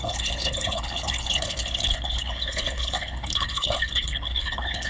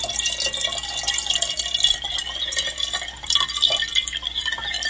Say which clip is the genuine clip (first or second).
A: second